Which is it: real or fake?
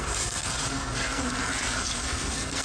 fake